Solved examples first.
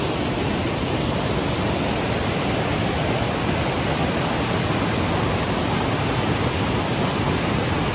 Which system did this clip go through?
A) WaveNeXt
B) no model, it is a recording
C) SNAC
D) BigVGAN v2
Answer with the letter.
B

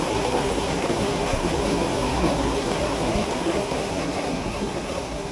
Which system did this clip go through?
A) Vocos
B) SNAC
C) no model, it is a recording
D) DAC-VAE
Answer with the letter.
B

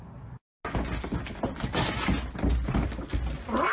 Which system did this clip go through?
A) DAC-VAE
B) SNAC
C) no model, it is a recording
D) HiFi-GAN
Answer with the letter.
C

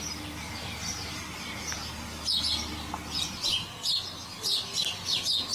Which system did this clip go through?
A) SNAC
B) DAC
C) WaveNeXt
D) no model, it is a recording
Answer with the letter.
D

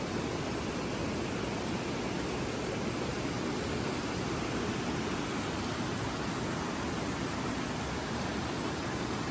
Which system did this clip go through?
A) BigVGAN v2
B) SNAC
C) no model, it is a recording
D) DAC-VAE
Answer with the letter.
C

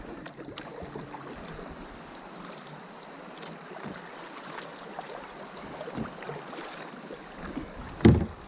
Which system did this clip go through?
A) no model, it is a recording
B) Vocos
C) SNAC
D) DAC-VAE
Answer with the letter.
A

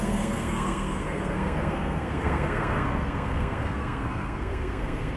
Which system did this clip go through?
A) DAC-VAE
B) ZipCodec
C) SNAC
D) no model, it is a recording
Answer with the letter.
C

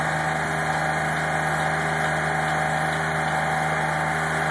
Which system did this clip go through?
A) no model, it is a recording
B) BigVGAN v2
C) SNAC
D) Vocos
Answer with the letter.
A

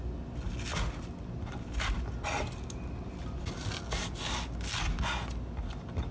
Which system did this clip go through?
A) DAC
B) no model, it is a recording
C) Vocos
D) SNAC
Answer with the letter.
B